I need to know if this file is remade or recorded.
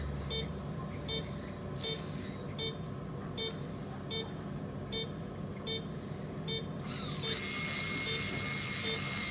recorded